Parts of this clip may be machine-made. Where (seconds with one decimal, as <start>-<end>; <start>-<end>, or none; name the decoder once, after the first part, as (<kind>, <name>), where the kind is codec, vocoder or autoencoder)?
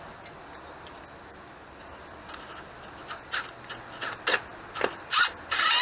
none